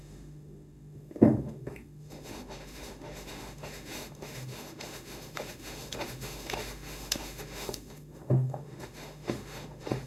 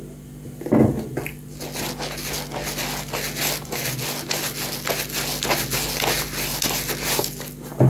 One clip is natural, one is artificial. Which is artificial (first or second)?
first